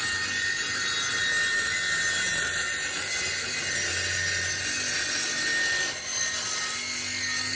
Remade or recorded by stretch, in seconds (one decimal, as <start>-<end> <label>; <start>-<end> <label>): 0.0-7.6 recorded